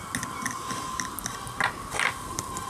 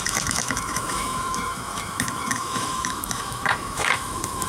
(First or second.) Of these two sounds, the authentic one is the first